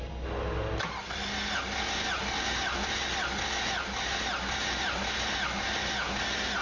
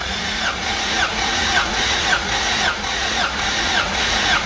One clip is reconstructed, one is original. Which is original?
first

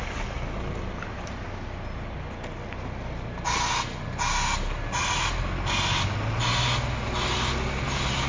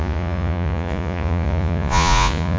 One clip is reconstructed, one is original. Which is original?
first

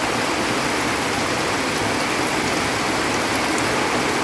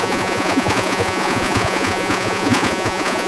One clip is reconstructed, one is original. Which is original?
first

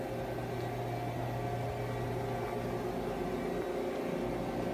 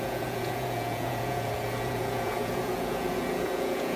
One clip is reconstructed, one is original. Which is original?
first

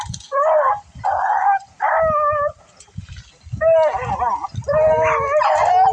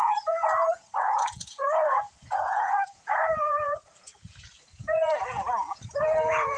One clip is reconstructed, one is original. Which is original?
first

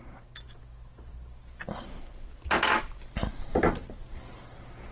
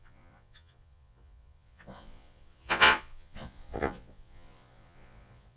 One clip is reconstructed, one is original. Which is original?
first